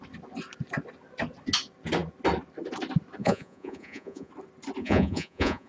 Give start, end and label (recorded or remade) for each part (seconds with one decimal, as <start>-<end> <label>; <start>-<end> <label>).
0.0-3.2 recorded; 3.2-4.3 remade; 4.3-4.8 recorded; 4.8-5.7 remade